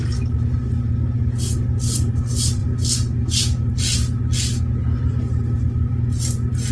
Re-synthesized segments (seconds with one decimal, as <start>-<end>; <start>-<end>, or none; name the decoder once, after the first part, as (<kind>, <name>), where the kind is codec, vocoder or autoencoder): none